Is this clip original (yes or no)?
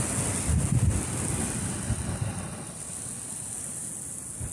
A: yes